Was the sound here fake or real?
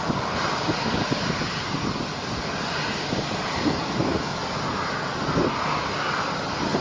real